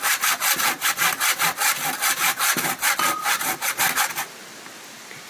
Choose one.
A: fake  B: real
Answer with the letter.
B